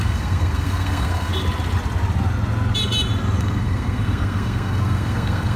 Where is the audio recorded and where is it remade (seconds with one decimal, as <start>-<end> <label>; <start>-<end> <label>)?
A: 0.0-1.3 remade; 1.3-3.4 recorded; 3.4-5.6 remade